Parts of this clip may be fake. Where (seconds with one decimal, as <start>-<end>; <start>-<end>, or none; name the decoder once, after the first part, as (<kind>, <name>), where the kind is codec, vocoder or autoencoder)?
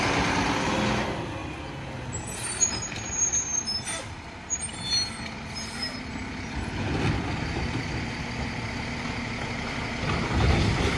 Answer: none